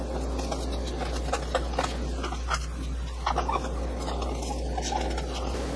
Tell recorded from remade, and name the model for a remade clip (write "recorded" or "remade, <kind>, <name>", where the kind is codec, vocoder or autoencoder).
recorded